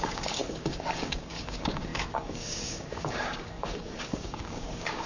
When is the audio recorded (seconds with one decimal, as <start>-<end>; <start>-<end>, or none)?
none